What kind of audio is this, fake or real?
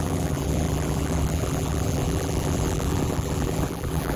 fake